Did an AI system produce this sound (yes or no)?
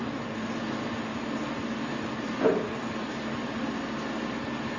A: no